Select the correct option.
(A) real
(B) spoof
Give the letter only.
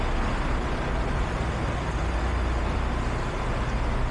A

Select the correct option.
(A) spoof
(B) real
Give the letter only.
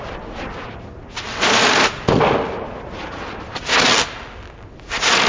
B